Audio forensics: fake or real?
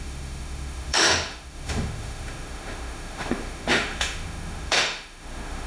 fake